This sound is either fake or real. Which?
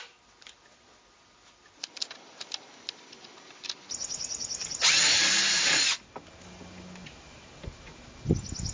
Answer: real